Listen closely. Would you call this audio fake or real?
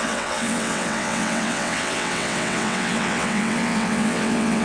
fake